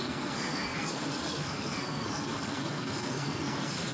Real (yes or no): no